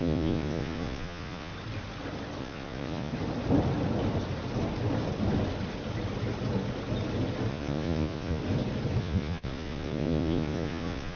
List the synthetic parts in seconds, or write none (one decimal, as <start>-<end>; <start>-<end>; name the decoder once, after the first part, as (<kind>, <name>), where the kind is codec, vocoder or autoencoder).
0.0-1.5 (vocoder, Vocos); 2.4-3.1; 7.5-8.4; 9.0-11.2